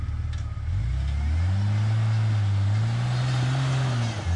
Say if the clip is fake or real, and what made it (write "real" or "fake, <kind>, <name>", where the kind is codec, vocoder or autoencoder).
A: real